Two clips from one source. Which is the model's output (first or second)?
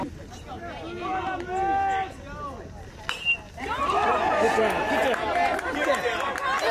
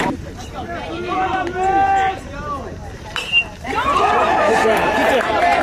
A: second